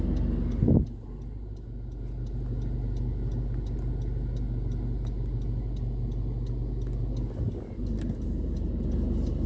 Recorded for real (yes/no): yes